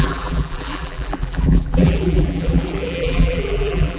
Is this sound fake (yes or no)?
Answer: yes